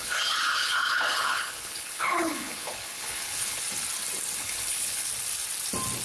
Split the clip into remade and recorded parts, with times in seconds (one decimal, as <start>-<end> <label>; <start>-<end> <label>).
0.0-3.6 remade; 3.6-4.4 recorded; 4.4-5.1 remade; 5.1-6.0 recorded